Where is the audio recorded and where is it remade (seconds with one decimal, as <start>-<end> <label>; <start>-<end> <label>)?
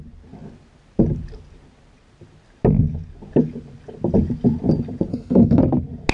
0.0-5.1 recorded; 5.1-5.6 remade; 5.6-6.1 recorded